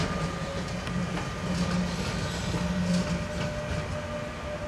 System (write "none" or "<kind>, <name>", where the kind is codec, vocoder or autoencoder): none